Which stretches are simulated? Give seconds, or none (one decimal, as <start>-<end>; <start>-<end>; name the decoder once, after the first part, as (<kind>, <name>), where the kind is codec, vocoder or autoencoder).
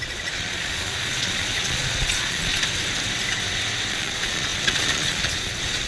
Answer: 0.0-2.5 (vocoder, Vocos); 3.9-5.9